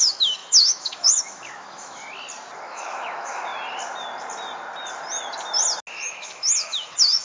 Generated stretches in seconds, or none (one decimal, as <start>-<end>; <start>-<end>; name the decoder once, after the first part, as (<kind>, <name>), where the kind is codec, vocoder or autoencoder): 0.0-2.0 (autoencoder, DAC-VAE); 2.6-3.5; 5.9-7.2